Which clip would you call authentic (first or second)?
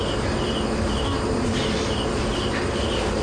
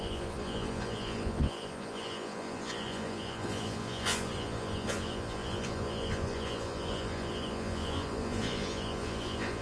first